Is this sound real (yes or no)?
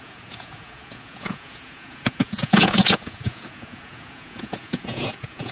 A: no